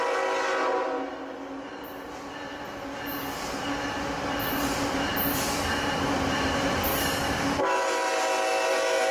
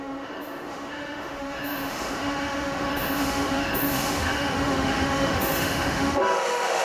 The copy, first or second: second